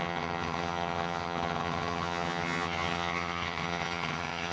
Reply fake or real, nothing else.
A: fake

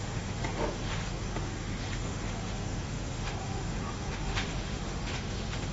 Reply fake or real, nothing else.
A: fake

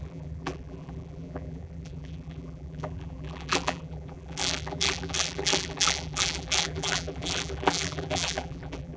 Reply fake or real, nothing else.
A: fake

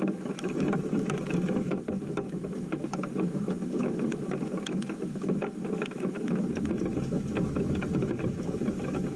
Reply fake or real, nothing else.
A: fake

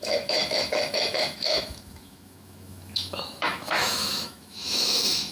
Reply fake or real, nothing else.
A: fake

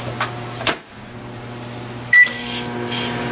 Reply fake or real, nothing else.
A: fake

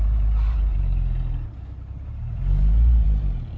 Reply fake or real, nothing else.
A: fake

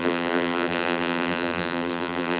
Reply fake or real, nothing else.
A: fake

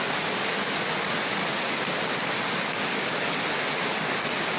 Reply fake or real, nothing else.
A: real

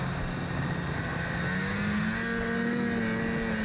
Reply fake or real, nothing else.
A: real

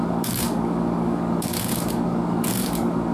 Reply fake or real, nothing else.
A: fake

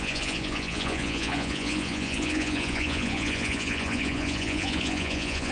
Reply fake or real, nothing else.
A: fake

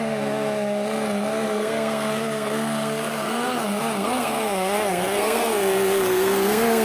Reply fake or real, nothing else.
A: fake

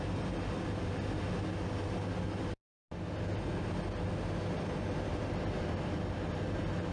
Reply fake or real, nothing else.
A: real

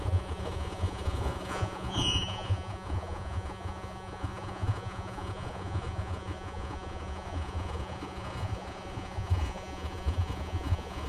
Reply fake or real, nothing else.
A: fake